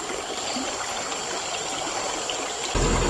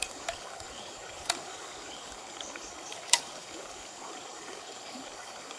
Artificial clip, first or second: second